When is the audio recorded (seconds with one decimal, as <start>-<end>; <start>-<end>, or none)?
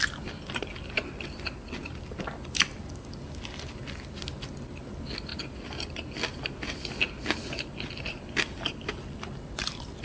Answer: 0.0-10.0